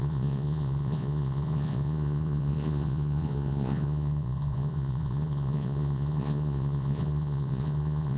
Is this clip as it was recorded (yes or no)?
no